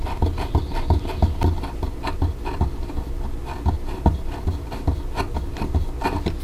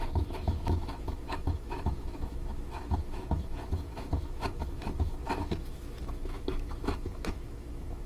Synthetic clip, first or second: second